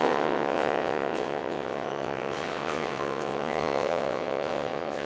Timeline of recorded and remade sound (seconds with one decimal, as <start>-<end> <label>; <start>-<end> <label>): 0.0-5.1 remade